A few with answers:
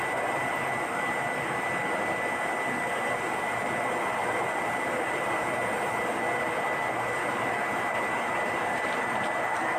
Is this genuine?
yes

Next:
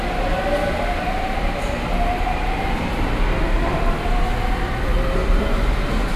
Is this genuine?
yes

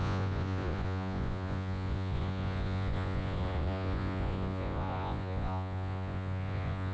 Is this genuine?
no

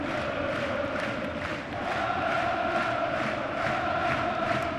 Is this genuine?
no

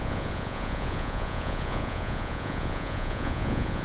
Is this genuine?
no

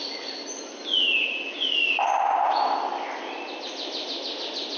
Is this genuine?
yes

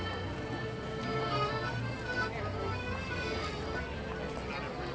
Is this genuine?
yes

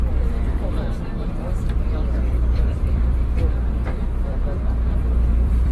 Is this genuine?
no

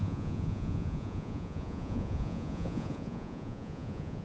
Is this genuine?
no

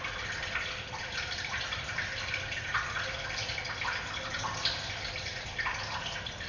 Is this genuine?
yes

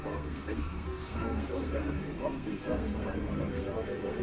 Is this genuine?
no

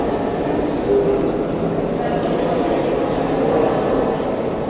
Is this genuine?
yes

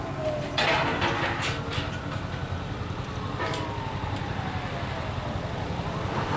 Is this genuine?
yes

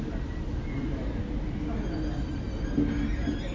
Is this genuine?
yes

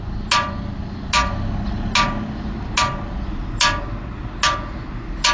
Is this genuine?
yes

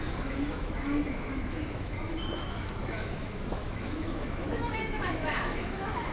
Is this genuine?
no